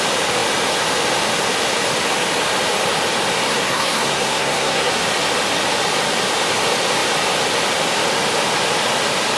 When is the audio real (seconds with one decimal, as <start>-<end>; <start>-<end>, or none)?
0.0-3.5; 4.9-9.4